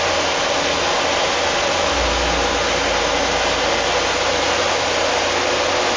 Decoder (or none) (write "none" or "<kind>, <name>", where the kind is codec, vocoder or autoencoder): none